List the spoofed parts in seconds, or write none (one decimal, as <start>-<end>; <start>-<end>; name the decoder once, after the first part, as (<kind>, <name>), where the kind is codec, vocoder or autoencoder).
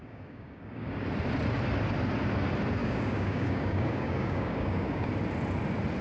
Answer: 0.0-0.9 (codec, DAC); 2.8-5.1